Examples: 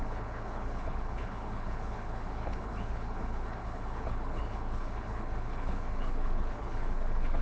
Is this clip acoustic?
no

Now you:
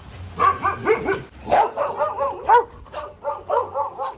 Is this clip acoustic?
yes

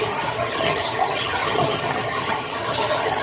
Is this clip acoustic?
no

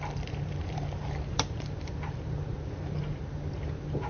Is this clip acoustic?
no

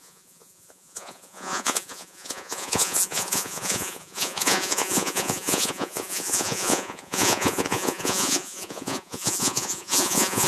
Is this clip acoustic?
no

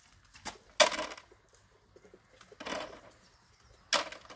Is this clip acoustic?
yes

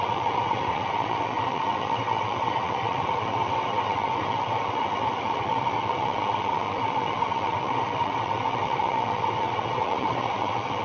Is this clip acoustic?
no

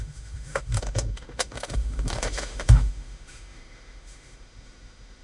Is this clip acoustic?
no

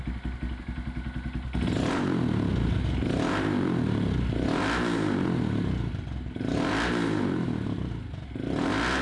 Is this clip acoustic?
yes